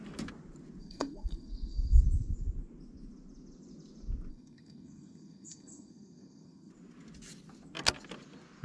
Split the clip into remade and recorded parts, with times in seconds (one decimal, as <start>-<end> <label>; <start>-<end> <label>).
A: 0.0-0.8 recorded; 0.8-2.0 remade; 2.0-4.3 recorded; 4.3-6.7 remade; 6.7-8.6 recorded